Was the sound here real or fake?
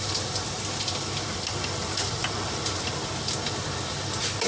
real